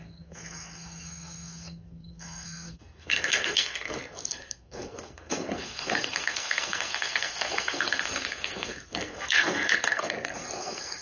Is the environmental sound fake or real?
fake